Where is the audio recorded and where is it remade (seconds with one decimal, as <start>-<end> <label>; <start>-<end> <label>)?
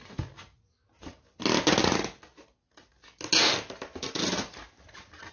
0.0-5.3 recorded